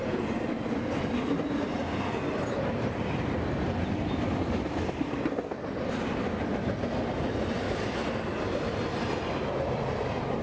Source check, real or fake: real